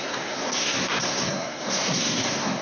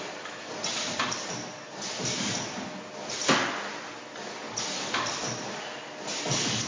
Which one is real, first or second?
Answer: second